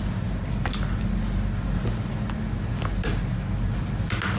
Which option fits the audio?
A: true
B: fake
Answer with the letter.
A